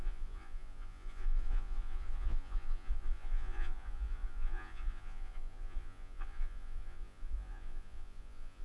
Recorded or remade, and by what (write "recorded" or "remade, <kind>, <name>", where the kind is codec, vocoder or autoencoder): remade, vocoder, Vocos